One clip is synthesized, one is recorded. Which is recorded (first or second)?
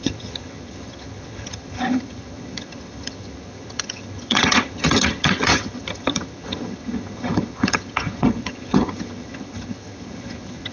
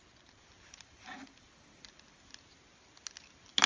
second